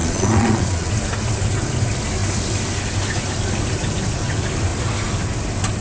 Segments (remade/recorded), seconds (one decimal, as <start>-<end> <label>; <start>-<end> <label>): 0.0-0.9 remade; 0.9-5.8 recorded